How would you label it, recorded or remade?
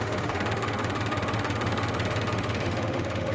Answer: remade